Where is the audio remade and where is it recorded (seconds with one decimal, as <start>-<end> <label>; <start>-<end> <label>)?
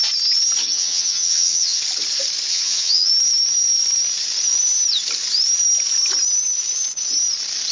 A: 0.0-0.6 recorded; 0.6-1.8 remade; 1.8-2.5 recorded; 2.5-3.1 remade; 3.1-7.7 recorded